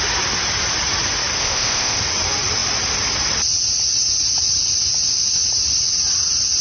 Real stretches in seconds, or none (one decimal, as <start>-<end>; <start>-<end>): 0.0-1.4; 2.0-6.6